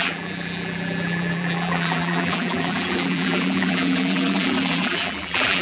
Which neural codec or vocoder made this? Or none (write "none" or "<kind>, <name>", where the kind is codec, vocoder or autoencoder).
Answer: vocoder, BigVGAN v2